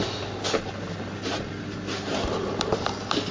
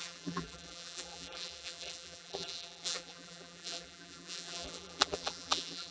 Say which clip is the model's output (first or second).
second